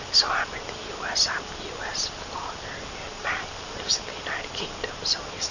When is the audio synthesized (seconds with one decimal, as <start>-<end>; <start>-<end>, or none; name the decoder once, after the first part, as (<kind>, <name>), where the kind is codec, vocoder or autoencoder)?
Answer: none